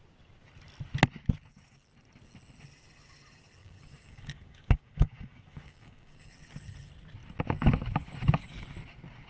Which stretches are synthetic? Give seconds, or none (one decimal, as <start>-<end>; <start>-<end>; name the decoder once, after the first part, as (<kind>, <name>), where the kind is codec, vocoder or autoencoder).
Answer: 3.6-6.3 (codec, DAC)